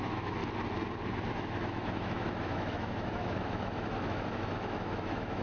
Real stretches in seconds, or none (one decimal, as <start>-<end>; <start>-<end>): 0.4-1.3